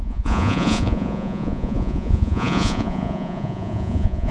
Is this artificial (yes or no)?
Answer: yes